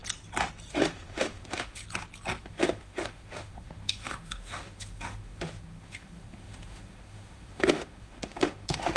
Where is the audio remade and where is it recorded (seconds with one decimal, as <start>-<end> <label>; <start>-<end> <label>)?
0.0-0.7 recorded; 0.7-1.8 remade; 1.8-2.4 recorded; 2.4-9.0 remade